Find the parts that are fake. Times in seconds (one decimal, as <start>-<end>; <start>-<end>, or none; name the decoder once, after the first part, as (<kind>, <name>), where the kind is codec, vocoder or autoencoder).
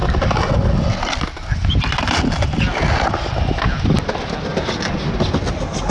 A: none